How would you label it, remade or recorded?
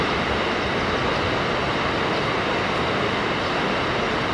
recorded